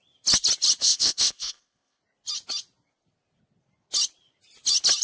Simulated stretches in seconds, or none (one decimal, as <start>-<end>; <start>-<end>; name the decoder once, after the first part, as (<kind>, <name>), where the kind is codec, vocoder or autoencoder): 0.8-2.0 (codec, ZipCodec)